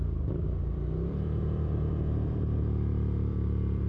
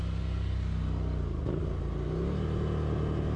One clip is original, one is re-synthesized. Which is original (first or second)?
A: second